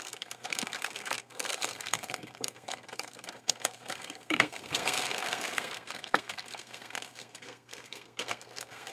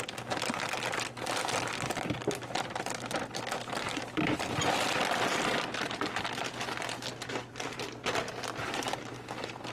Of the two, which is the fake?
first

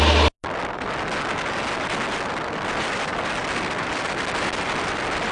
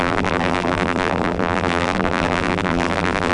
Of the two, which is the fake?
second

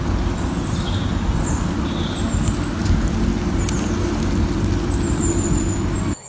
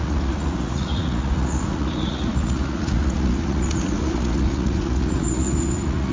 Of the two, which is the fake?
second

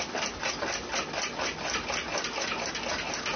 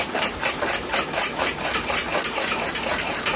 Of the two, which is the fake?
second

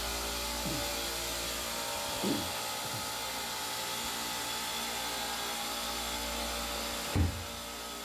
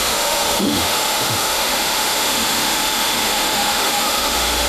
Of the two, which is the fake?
second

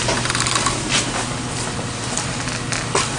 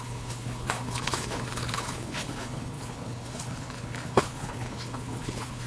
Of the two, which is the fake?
second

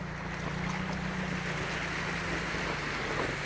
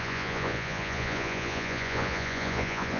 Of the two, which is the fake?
second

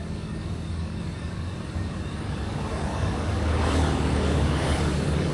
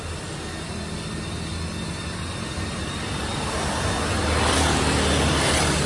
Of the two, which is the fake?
first